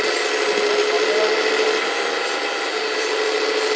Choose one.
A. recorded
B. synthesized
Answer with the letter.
A